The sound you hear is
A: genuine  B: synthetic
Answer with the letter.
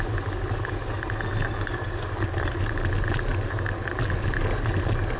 A